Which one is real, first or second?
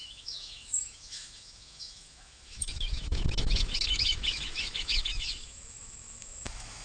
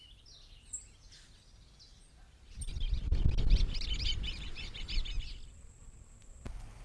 second